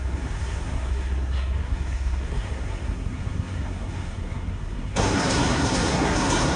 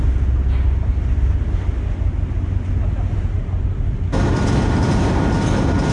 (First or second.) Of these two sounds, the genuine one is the second